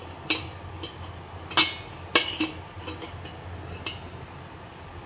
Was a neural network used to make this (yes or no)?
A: no